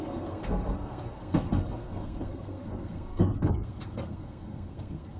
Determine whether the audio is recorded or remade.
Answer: remade